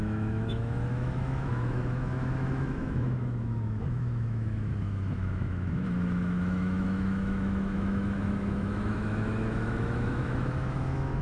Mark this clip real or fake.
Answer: fake